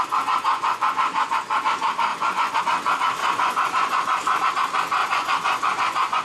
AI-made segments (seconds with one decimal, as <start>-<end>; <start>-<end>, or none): 0.5-1.6; 2.1-2.6; 3.2-4.5; 5.0-6.2